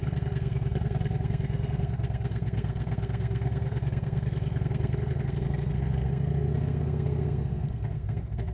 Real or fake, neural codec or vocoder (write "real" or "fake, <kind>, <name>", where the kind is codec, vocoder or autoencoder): fake, codec, SNAC